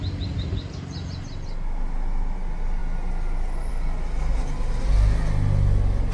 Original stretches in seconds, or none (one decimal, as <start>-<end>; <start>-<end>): 0.0-6.1